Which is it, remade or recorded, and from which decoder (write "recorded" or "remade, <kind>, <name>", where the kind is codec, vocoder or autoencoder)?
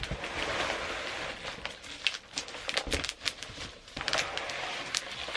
recorded